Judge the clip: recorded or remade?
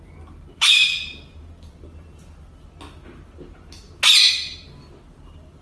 recorded